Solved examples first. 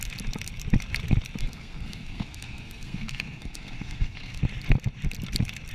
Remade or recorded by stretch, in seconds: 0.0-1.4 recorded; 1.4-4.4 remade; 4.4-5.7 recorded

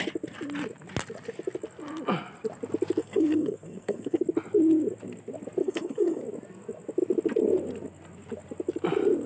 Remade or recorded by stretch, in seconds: 0.0-3.0 recorded; 3.0-4.2 remade; 4.2-5.6 recorded; 5.6-6.2 remade; 6.2-9.3 recorded

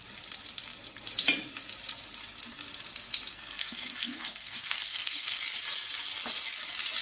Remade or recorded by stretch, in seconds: 0.0-3.3 recorded; 3.3-5.4 remade; 5.4-7.0 recorded

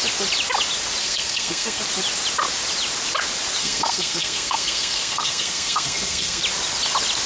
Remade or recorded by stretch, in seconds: 0.0-1.0 recorded; 1.0-1.8 remade; 1.8-3.6 recorded; 3.6-6.4 remade; 6.4-7.3 recorded

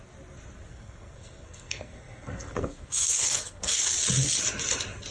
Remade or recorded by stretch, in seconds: 0.0-0.7 recorded; 0.7-3.8 remade; 3.8-5.1 recorded

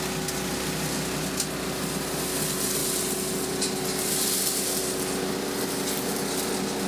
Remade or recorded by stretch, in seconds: 0.0-6.9 recorded

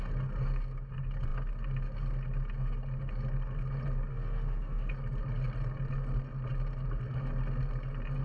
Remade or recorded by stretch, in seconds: 0.0-4.1 recorded; 4.1-4.9 remade; 4.9-8.2 recorded

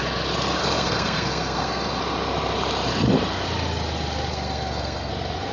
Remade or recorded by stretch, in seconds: 0.0-0.6 recorded; 0.6-2.0 remade; 2.0-4.3 recorded; 4.3-5.1 remade; 5.1-5.5 recorded